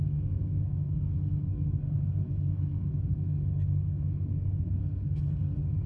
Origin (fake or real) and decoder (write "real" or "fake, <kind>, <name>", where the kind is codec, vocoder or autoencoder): fake, codec, SNAC